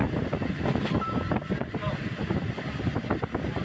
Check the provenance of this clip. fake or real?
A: real